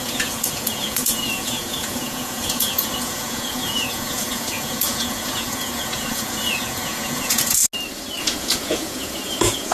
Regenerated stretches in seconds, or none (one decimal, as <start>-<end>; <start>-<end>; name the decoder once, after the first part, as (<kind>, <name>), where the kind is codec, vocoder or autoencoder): 0.0-7.6 (vocoder, Vocos); 8.2-9.7